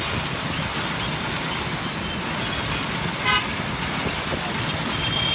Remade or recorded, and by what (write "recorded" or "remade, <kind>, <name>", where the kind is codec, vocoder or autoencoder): recorded